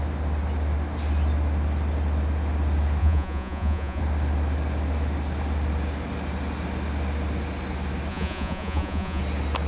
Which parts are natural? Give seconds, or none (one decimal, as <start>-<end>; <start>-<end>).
0.0-3.0; 4.0-8.1; 9.2-9.7